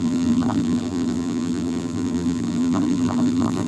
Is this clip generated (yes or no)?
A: yes